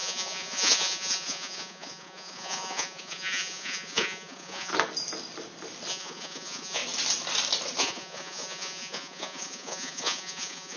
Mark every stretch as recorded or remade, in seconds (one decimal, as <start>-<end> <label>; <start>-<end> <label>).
0.0-4.7 remade; 4.7-5.9 recorded; 5.9-6.8 remade; 6.8-7.8 recorded; 7.8-10.8 remade